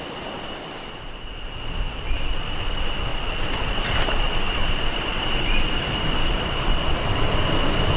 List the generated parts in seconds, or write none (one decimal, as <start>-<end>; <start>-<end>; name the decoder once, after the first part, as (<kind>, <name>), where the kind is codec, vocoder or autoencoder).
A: 4.6-6.7 (vocoder, BigVGAN v2)